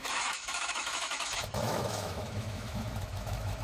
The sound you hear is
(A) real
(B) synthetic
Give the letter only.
B